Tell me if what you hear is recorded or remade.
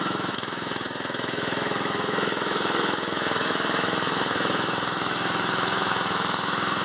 remade